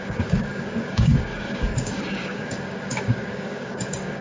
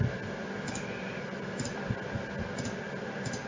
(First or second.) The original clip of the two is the second